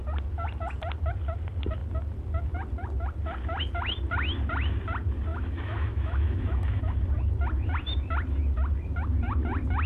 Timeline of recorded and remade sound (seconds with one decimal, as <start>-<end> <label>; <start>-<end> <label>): 0.0-5.3 recorded; 5.3-6.8 remade; 6.8-9.9 recorded